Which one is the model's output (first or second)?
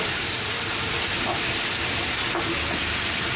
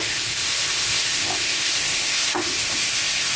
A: second